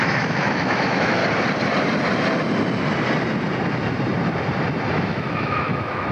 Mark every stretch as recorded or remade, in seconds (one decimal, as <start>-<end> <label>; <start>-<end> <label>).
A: 0.0-1.2 remade; 1.2-4.9 recorded; 4.9-6.1 remade